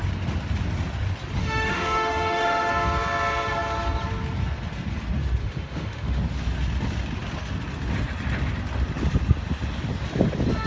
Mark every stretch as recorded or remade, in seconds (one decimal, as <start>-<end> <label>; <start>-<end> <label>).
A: 0.0-1.4 recorded; 1.4-2.7 remade; 2.7-5.4 recorded; 5.4-6.2 remade; 6.2-10.7 recorded